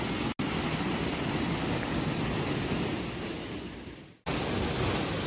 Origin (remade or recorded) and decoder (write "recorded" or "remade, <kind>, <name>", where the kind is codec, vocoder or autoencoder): recorded